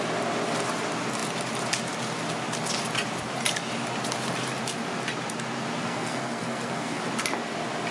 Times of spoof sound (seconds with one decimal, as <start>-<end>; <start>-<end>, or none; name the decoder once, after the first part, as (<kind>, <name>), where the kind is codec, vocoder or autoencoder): 5.8-7.0 (codec, SNAC)